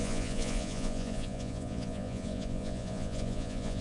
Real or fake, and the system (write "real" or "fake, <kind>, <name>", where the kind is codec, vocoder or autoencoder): fake, vocoder, Vocos